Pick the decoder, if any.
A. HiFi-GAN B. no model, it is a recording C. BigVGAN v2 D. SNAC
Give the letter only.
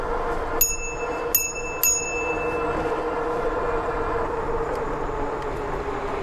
B